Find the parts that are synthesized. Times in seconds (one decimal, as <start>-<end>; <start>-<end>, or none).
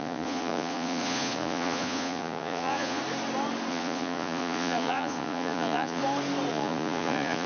0.0-3.0; 3.7-6.0; 6.5-7.5